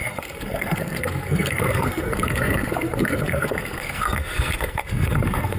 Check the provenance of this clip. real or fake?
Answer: fake